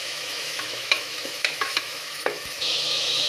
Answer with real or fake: fake